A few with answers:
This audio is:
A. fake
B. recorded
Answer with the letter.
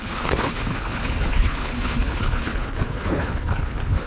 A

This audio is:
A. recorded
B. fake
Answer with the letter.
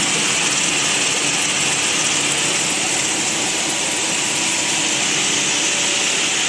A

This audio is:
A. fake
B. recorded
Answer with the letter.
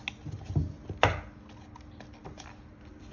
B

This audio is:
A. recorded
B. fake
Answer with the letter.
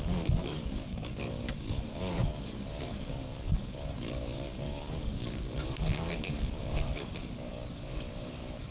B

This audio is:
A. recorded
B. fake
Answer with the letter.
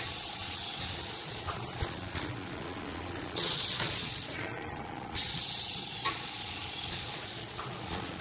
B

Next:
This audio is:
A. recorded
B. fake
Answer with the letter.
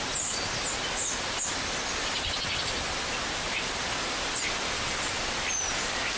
A